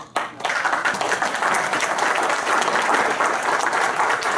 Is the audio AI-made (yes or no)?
no